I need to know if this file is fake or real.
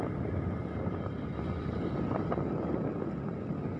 real